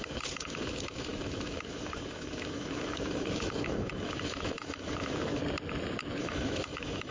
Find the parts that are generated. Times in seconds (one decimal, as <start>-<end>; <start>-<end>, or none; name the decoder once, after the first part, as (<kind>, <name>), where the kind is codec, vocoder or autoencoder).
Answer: 0.0-5.4 (autoencoder, DAC-VAE); 6.2-7.1